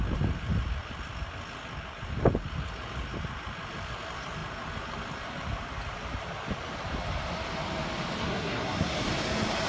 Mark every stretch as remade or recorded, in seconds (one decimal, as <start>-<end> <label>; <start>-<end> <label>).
0.0-8.2 recorded; 8.2-9.1 remade; 9.1-9.7 recorded